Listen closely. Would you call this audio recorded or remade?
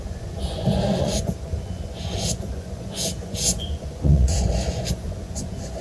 remade